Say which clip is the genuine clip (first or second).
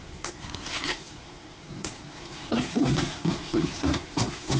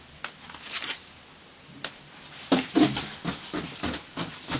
second